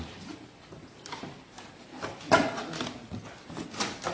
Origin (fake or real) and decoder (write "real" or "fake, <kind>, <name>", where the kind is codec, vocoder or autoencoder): real